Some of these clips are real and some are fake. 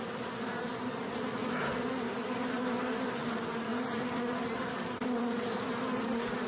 real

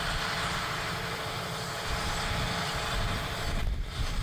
fake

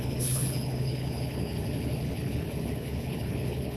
fake